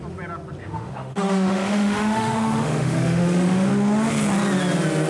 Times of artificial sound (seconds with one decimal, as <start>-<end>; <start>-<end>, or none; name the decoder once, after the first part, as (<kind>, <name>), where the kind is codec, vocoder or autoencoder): 0.6-3.7 (autoencoder, DAC-VAE)